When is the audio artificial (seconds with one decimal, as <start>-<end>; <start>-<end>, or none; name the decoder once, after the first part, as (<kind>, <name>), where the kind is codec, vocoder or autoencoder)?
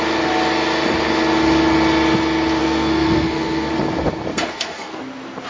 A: 2.6-3.7 (codec, SNAC); 4.3-5.0